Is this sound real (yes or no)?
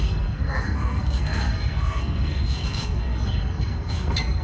no